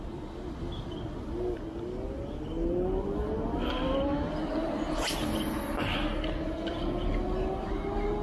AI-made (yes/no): no